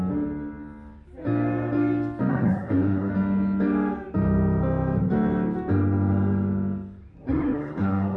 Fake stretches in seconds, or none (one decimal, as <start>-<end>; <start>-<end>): 2.3-3.1; 7.1-8.2